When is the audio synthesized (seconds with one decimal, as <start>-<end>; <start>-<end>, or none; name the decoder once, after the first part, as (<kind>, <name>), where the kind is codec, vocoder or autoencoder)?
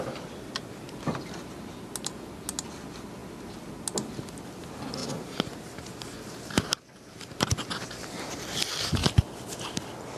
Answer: none